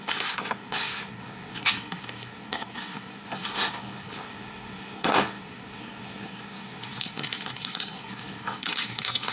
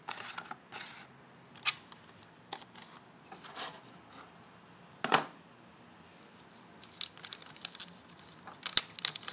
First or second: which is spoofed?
first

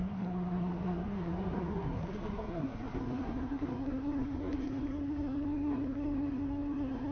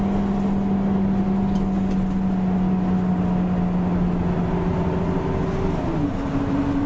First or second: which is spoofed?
first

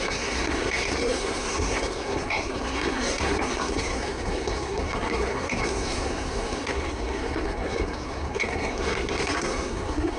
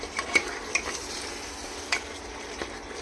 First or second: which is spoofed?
first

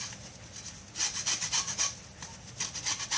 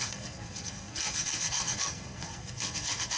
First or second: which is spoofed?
second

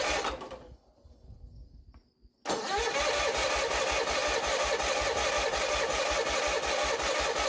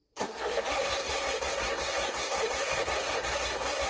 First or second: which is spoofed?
second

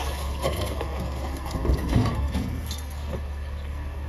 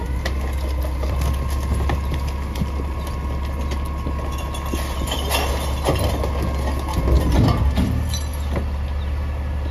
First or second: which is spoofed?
first